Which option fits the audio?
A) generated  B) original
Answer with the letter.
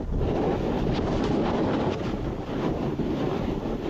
B